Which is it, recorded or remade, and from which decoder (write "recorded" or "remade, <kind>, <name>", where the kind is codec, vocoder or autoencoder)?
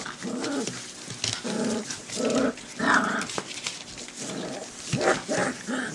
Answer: recorded